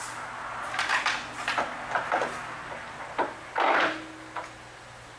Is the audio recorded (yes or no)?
yes